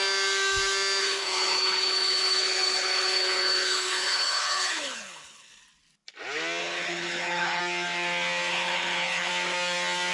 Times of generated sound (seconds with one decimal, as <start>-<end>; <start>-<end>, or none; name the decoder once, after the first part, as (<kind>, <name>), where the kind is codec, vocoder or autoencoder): 1.0-5.6 (codec, HILCodec); 6.6-7.6; 8.5-9.3

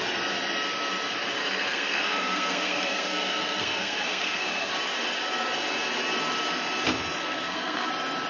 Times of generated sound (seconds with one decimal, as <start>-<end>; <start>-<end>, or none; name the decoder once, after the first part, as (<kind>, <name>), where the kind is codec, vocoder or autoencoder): 1.4-4.7 (codec, SNAC); 7.2-7.9

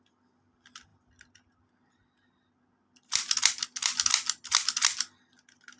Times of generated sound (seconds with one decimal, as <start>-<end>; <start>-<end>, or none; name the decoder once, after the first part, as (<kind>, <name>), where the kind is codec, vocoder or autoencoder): none

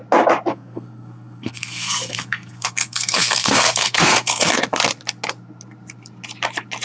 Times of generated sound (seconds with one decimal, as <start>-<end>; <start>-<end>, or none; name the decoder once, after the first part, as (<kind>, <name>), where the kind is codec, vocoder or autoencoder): 0.5-4.5 (codec, SNAC)

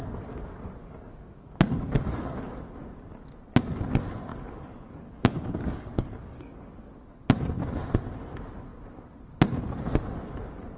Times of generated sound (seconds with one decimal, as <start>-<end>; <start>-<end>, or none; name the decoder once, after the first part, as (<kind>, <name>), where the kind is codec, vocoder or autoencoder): 0.8-2.5 (codec, DAC); 4.3-6.9

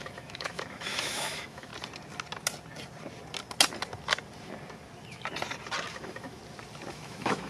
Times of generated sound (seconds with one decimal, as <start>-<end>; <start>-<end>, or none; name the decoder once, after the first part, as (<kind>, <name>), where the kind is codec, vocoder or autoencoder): 0.0-1.7 (autoencoder, DAC-VAE); 5.9-6.4; 6.9-7.5

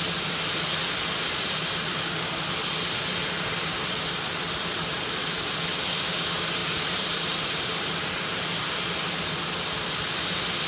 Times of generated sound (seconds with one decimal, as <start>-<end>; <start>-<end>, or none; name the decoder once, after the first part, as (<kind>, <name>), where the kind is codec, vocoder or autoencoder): 4.7-5.4 (vocoder, BigVGAN v2); 6.6-9.3